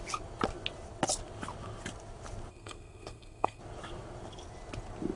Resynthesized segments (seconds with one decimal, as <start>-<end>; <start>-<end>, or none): 2.5-3.6